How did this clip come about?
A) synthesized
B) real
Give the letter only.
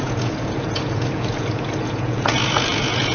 A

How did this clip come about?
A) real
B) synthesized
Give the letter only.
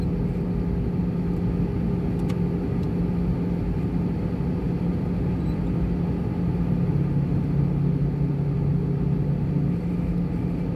A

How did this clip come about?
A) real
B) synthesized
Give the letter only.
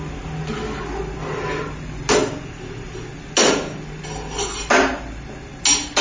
A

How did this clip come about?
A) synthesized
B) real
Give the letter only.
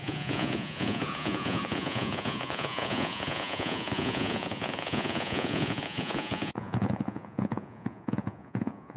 A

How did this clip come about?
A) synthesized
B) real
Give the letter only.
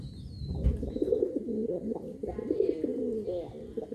B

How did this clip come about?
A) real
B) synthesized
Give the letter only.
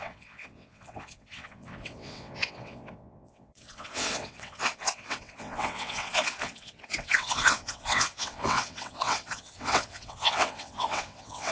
B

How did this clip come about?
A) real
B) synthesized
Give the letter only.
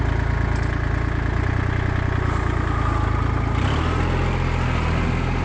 A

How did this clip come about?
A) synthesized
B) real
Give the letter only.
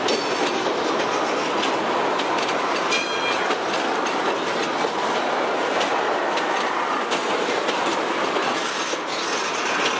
B